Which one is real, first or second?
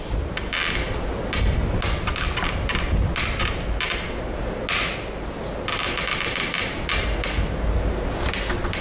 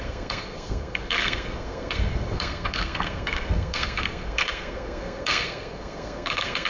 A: first